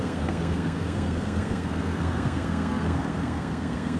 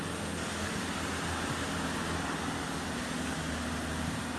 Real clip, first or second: second